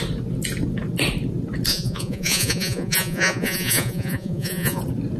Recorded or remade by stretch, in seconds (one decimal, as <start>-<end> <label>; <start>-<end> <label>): 0.0-1.7 recorded; 1.7-4.8 remade; 4.8-5.2 recorded